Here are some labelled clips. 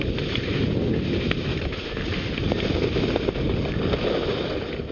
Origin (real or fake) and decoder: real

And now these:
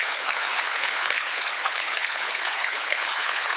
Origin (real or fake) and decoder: fake, codec, HILCodec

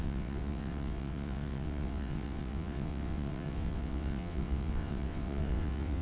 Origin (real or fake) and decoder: fake, vocoder, WaveNeXt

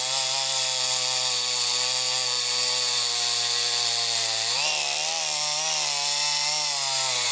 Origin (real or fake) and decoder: fake, vocoder, BigVGAN v2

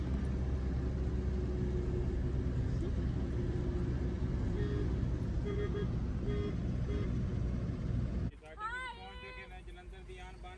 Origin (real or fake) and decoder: real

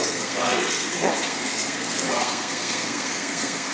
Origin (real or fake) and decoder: fake, codec, SNAC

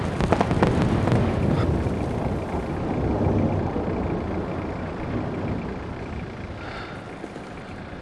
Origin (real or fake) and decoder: real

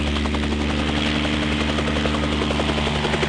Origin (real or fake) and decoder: real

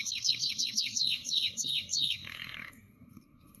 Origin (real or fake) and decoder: fake, codec, SNAC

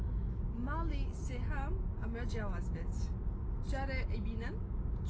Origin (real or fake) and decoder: real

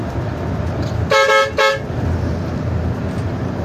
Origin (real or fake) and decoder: real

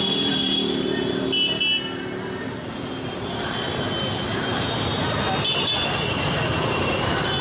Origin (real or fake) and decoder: real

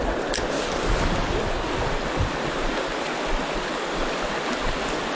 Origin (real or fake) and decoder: real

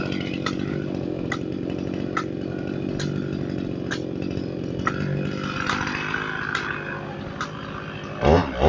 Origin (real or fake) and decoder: real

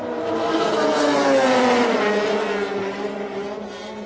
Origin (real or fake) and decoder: real